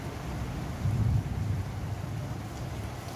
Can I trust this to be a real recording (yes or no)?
yes